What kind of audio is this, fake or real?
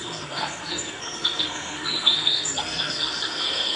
fake